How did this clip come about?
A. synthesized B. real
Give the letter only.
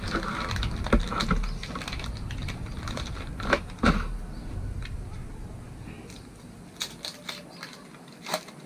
B